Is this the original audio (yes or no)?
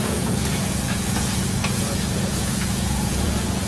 no